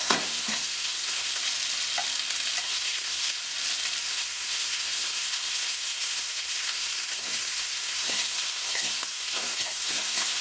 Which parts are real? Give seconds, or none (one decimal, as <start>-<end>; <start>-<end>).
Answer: 1.4-2.6; 3.4-4.0